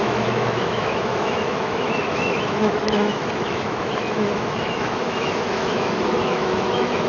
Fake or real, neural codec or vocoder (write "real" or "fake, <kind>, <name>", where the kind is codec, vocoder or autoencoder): fake, autoencoder, DAC-VAE